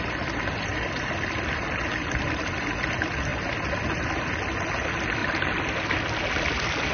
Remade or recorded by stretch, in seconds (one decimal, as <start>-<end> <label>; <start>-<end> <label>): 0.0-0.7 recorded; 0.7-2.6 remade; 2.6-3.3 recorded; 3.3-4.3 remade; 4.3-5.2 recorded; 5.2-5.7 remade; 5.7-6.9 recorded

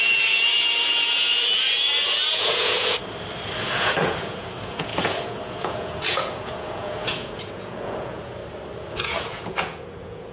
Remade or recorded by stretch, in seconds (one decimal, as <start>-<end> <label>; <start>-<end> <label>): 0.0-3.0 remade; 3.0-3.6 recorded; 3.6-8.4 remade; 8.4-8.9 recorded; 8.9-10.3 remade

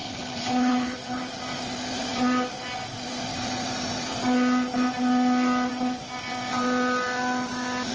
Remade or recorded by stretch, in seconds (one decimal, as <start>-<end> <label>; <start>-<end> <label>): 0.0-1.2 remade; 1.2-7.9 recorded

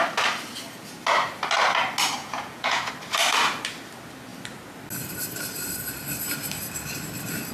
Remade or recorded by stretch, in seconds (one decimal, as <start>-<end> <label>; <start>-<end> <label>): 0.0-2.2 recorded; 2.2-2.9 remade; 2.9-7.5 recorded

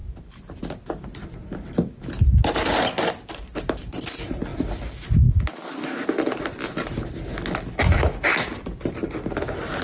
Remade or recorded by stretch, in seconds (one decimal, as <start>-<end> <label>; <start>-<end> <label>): 0.0-9.8 recorded

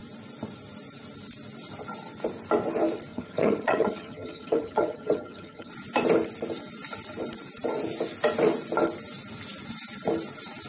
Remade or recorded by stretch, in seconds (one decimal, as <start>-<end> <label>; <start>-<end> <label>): 0.0-3.1 recorded; 3.1-5.7 remade; 5.7-10.7 recorded